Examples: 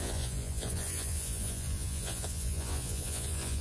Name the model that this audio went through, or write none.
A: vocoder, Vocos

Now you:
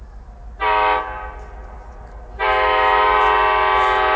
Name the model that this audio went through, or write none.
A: none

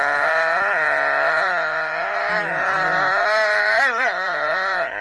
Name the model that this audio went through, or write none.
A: vocoder, BigVGAN v2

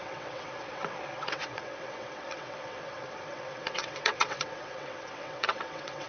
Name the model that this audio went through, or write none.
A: vocoder, WaveNeXt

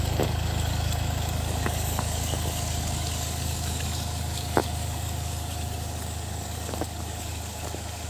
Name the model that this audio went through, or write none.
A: codec, DAC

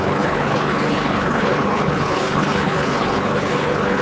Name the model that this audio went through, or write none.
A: codec, HILCodec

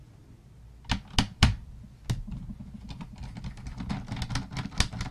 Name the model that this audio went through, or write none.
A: none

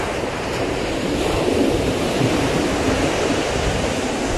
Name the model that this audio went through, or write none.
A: vocoder, BigVGAN v2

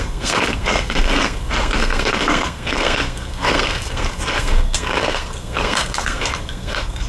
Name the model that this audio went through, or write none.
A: codec, SNAC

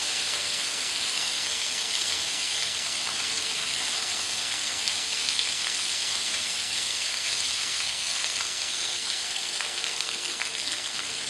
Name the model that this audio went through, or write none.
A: codec, SNAC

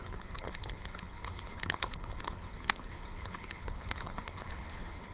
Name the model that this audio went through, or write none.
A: codec, HILCodec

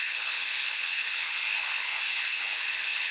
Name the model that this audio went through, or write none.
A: codec, HILCodec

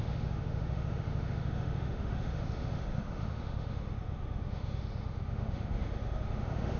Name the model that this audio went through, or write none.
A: autoencoder, DAC-VAE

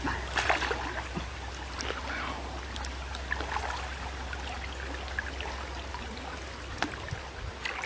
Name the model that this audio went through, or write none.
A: none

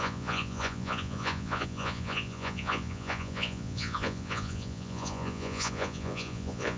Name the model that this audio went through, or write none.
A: vocoder, Vocos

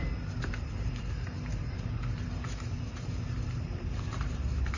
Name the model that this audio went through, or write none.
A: vocoder, BigVGAN v2